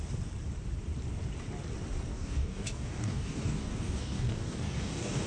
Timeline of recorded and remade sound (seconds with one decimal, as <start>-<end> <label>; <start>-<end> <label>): 0.0-2.1 recorded; 2.1-5.3 remade